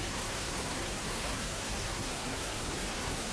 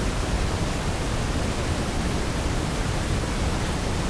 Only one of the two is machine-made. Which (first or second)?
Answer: first